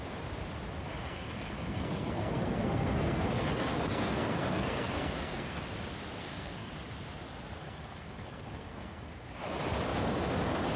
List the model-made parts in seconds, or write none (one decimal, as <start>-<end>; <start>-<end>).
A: 1.0-5.6; 6.2-6.7; 7.6-9.1